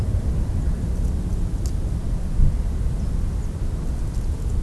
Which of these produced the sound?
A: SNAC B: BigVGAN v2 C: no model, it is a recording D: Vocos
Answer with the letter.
C